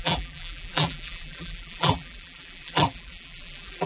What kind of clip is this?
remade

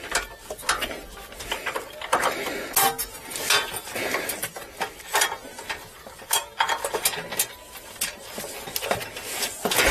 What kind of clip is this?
recorded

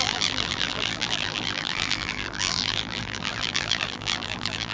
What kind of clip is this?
remade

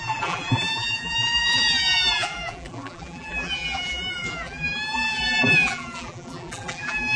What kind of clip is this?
remade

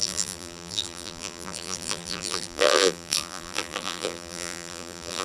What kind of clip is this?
remade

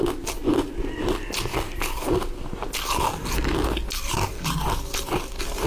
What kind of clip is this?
recorded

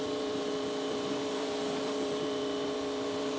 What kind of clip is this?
remade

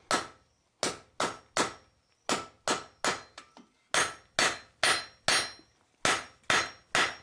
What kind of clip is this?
recorded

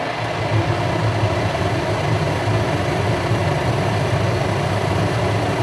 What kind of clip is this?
recorded